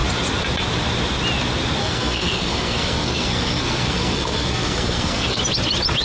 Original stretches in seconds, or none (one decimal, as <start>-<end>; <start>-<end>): 0.0-1.8; 5.4-6.0